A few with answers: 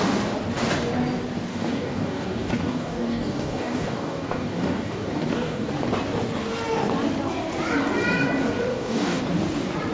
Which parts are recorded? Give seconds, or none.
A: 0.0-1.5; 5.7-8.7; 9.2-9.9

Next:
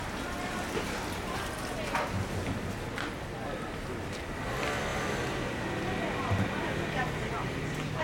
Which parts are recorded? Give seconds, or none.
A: 0.0-4.9; 5.5-8.0

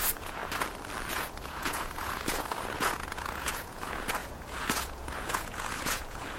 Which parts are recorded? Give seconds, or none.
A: 0.4-1.1